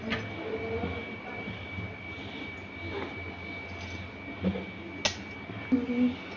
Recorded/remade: recorded